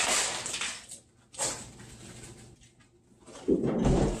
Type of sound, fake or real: real